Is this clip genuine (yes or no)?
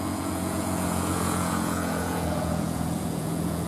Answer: no